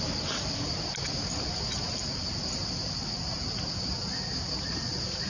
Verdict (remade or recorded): recorded